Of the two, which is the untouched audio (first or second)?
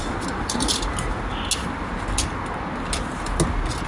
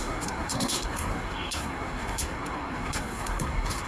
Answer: first